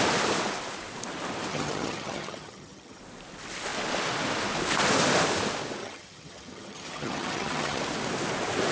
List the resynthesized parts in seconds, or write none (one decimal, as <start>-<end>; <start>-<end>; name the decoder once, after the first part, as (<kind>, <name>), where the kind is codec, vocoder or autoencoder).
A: 1.5-3.0 (vocoder, HiFi-GAN); 5.8-7.8